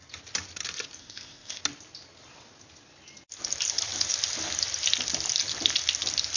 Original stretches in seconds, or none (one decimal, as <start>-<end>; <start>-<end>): 0.0-1.0; 1.6-6.4